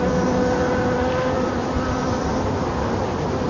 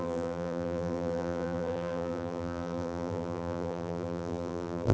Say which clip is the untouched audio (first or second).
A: first